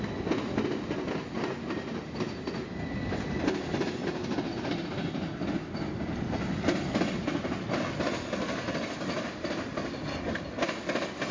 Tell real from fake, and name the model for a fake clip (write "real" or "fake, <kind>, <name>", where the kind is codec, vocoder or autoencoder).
real